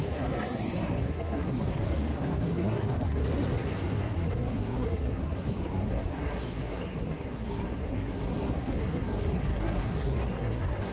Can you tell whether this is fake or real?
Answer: fake